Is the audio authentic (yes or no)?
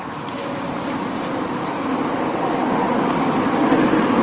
yes